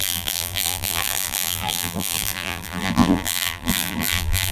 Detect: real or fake fake